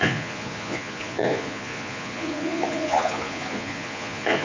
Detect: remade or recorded remade